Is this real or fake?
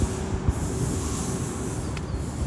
real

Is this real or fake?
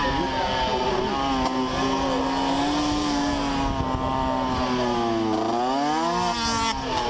real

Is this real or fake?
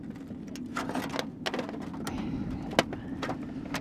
real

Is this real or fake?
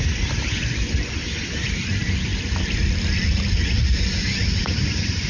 fake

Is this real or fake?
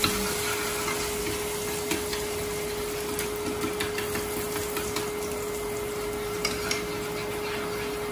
real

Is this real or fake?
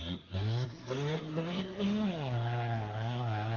fake